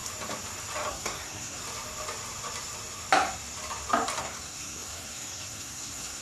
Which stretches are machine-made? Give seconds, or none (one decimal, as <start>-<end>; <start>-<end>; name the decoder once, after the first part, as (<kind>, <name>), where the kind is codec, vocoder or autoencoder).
0.9-1.6 (codec, SNAC); 4.2-6.2